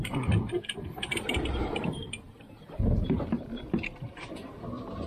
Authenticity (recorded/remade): remade